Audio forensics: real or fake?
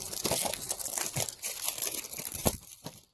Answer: fake